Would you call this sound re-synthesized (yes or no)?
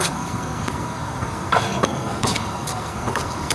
yes